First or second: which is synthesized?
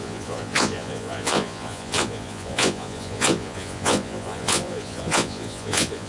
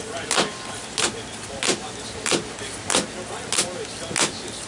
first